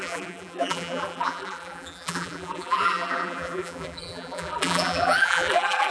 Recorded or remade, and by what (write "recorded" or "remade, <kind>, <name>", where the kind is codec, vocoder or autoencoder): remade, vocoder, BigVGAN v2